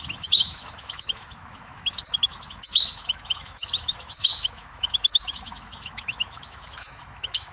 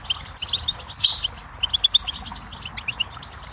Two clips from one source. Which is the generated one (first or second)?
first